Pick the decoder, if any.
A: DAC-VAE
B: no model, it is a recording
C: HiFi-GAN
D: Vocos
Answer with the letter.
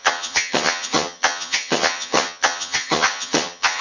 C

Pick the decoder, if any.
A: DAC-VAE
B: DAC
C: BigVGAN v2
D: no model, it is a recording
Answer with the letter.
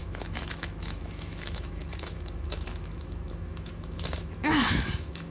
A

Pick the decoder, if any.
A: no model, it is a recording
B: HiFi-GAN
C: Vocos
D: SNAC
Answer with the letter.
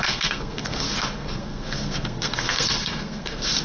D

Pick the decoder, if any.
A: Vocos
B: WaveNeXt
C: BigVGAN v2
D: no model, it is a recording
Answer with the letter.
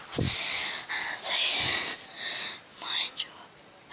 D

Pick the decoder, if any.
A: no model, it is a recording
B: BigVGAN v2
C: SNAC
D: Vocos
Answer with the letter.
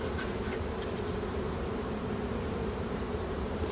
B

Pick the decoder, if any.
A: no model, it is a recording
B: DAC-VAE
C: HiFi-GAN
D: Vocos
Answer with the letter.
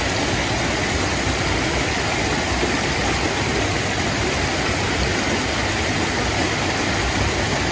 A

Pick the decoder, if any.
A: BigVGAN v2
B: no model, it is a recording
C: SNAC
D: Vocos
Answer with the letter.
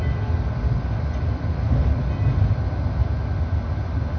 B